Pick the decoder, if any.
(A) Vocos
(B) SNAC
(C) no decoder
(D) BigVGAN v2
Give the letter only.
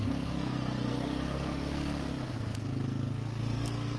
B